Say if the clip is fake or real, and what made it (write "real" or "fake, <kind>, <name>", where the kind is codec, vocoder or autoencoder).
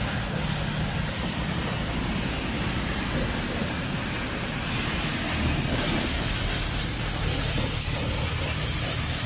real